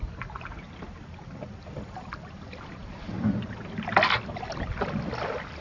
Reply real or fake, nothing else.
real